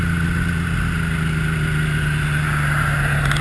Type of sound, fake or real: real